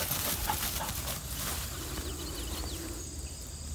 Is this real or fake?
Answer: real